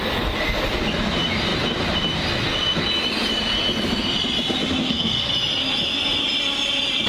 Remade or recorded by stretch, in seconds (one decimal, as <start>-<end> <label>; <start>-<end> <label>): 0.0-4.8 recorded; 4.8-5.3 remade; 5.3-7.1 recorded